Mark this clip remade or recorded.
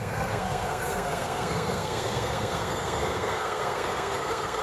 remade